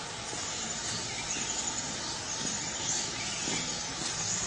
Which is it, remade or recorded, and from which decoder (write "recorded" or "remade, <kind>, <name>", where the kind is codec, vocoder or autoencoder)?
recorded